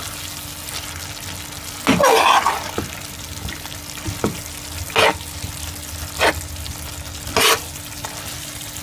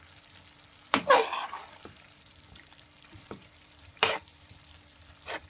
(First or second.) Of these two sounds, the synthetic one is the second